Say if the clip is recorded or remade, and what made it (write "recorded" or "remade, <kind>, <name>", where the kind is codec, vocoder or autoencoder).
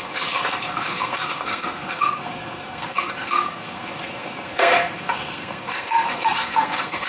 remade, codec, SNAC